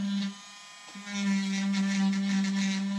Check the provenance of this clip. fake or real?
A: real